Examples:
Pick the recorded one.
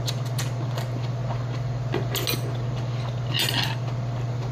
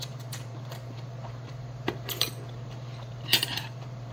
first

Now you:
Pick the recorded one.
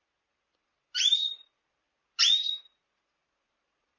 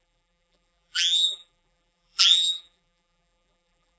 first